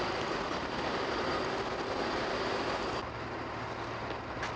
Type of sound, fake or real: real